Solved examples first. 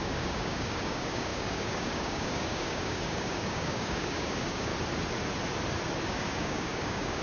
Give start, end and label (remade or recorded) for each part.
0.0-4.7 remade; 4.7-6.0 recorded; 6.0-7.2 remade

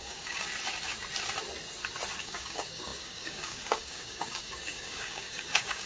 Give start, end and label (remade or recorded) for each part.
0.0-0.5 remade; 0.5-2.2 recorded; 2.2-5.9 remade

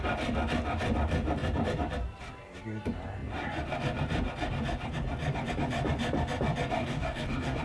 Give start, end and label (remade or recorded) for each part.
0.0-6.8 recorded; 6.8-7.6 remade